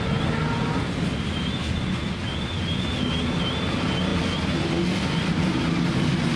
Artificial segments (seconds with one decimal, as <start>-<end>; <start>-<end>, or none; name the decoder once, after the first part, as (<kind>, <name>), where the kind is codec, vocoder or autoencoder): none